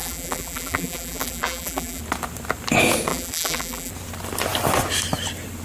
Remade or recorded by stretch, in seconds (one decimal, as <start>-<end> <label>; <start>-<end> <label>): 0.0-2.0 remade; 2.0-3.1 recorded; 3.1-3.9 remade; 3.9-5.6 recorded